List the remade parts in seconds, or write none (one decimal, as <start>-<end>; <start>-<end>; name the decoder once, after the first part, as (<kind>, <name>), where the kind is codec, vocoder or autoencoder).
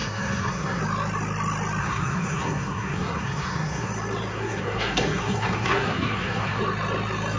0.0-0.8 (codec, SNAC); 1.8-3.9; 4.3-6.6